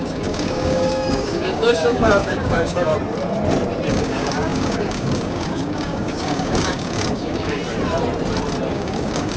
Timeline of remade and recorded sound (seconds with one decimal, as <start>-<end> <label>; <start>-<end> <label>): 0.0-2.9 remade; 2.9-3.9 recorded; 3.9-7.6 remade; 7.6-8.7 recorded; 8.7-9.4 remade